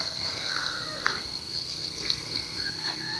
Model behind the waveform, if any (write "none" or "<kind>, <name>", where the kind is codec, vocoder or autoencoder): codec, SNAC